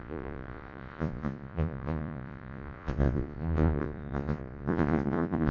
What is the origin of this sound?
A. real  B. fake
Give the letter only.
B